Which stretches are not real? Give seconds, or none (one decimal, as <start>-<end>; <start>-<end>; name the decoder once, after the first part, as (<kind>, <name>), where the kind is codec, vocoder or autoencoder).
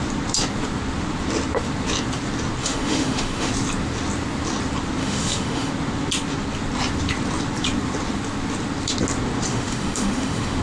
2.6-3.5 (autoencoder, DAC-VAE); 5.0-5.7; 9.5-10.6